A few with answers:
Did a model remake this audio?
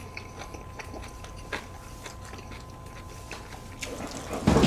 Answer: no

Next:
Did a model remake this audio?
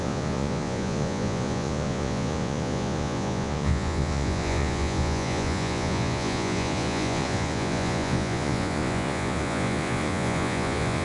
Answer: yes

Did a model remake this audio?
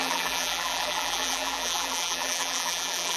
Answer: yes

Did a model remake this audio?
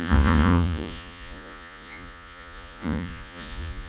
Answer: yes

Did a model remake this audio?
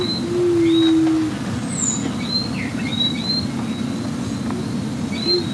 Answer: no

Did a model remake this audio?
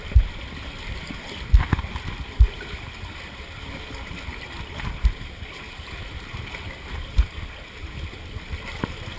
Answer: no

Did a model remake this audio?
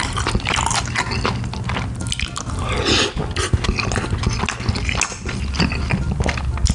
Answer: no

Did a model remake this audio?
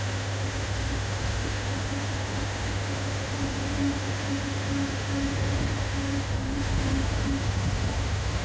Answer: yes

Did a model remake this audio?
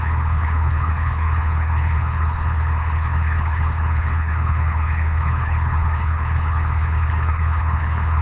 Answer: yes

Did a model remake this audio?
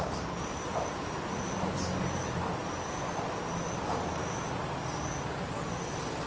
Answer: no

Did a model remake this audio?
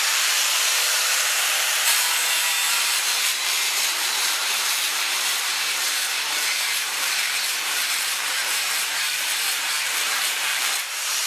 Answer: yes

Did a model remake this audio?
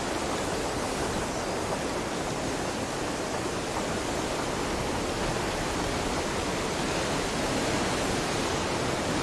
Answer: no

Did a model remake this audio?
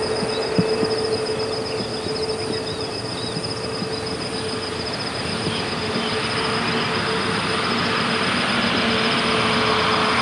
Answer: no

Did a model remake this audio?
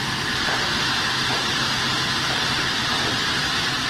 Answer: no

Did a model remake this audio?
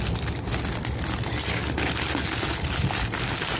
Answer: no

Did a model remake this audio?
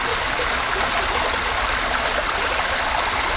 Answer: no